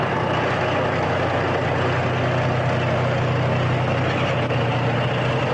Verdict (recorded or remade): recorded